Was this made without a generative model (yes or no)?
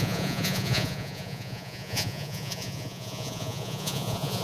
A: no